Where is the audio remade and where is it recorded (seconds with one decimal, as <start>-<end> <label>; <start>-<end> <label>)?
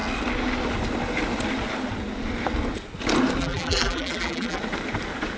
0.0-3.4 recorded; 3.4-4.6 remade; 4.6-5.4 recorded